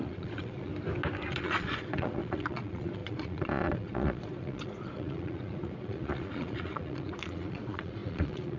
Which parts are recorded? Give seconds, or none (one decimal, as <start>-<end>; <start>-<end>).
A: 0.7-1.3